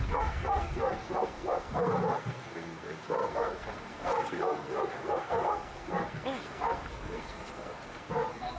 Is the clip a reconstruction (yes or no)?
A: yes